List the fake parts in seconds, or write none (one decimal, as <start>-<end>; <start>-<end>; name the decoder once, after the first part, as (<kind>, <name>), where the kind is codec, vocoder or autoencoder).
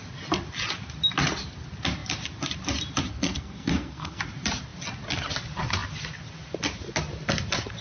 3.1-4.2 (codec, SNAC)